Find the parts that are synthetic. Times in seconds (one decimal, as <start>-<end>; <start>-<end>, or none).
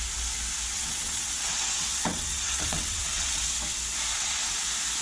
0.7-3.4; 4.1-4.6